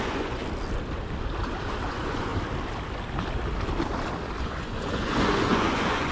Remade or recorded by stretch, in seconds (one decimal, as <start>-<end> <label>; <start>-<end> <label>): 0.0-0.4 remade; 0.4-1.9 recorded; 1.9-2.3 remade; 2.3-4.4 recorded; 4.4-6.1 remade